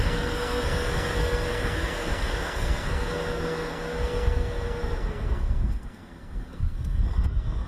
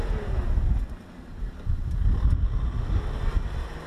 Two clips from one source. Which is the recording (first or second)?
second